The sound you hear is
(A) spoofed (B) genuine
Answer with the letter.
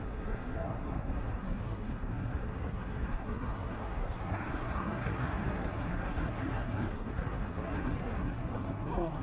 A